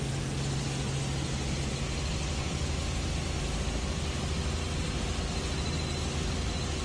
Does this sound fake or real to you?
real